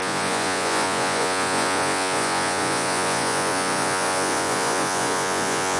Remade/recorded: remade